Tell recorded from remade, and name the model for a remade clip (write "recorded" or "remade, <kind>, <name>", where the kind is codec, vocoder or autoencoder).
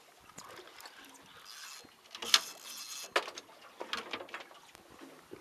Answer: recorded